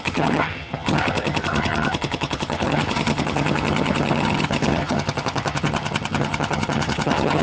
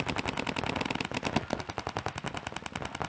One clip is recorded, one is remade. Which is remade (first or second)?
first